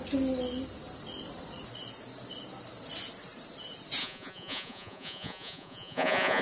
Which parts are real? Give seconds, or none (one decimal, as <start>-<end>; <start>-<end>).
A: 0.0-4.0